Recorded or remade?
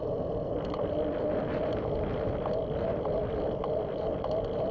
recorded